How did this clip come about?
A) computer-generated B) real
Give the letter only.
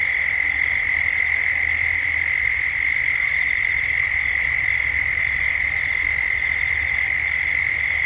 B